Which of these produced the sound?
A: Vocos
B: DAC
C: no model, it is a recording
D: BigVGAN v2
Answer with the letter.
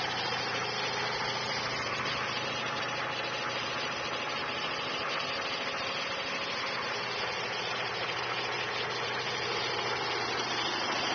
C